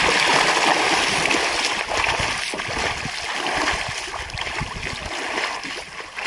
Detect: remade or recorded recorded